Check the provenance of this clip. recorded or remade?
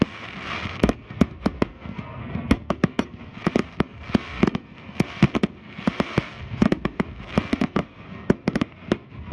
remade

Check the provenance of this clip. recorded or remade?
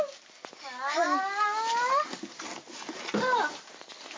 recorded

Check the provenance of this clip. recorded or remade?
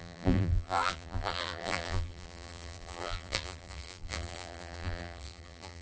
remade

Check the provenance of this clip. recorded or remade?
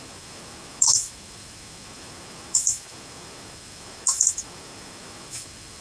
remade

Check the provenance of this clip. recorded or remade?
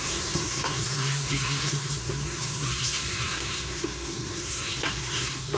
remade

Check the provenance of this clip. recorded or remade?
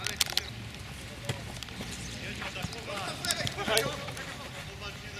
recorded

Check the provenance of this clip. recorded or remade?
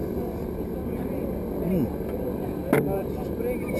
recorded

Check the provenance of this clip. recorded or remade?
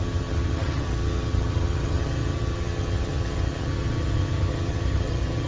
remade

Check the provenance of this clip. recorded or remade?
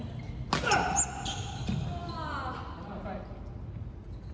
recorded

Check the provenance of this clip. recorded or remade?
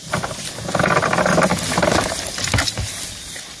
recorded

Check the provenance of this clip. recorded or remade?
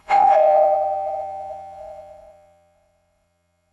remade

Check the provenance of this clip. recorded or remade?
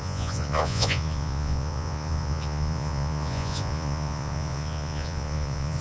remade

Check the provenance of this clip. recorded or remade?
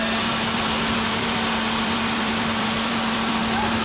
remade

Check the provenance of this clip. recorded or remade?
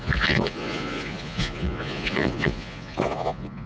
remade